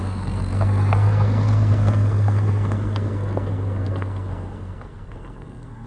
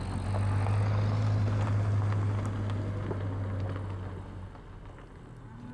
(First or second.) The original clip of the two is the second